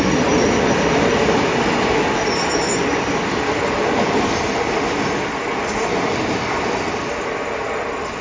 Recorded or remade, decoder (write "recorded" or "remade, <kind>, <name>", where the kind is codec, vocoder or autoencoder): recorded